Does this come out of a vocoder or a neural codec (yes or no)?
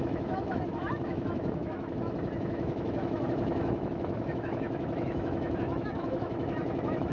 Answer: yes